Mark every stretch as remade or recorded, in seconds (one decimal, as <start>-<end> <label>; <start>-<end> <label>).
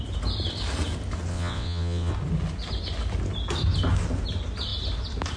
0.0-1.3 recorded; 1.3-2.1 remade; 2.1-5.4 recorded